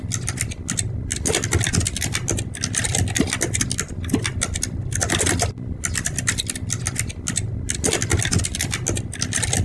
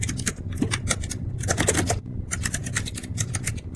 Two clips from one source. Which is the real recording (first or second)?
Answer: first